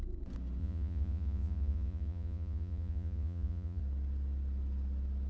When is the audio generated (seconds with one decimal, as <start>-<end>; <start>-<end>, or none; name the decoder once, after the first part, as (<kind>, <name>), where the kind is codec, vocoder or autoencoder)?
0.6-3.8 (vocoder, Vocos)